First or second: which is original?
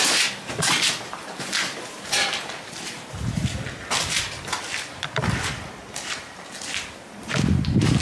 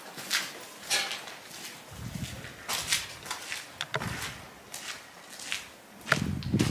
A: second